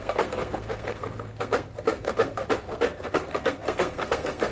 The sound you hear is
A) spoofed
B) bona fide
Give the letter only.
A